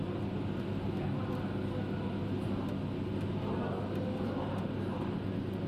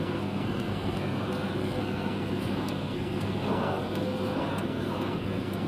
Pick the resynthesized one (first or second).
second